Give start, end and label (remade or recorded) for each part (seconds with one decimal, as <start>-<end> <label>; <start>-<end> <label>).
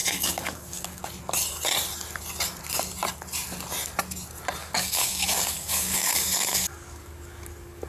0.0-1.0 remade; 1.0-4.6 recorded; 4.6-7.9 remade